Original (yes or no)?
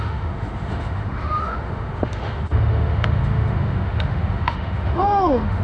no